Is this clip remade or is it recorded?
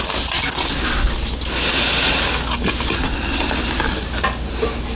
recorded